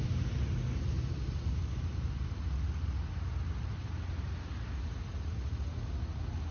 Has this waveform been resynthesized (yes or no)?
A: no